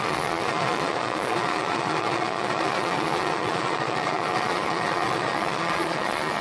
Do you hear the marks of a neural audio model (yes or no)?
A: yes